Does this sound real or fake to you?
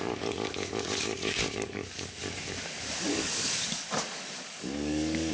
fake